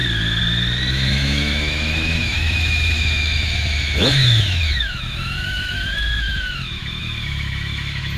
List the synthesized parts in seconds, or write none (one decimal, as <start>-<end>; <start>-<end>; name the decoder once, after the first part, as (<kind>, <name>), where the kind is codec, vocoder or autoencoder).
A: 0.9-8.2 (autoencoder, DAC-VAE)